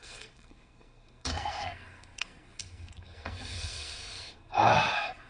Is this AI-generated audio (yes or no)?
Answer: yes